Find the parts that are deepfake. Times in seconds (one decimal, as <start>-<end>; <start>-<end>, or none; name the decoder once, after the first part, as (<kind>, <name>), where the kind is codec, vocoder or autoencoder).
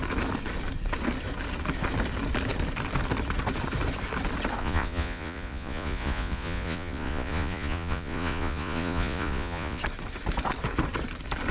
4.6-9.8 (vocoder, Vocos)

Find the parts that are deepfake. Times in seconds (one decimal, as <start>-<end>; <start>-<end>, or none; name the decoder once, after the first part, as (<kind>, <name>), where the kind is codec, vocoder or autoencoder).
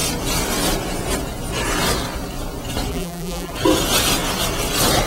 2.9-3.5 (vocoder, BigVGAN v2)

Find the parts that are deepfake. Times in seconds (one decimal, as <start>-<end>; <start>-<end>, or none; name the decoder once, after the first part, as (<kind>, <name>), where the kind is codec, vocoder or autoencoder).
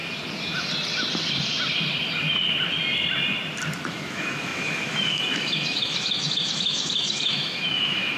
3.9-8.2 (autoencoder, DAC-VAE)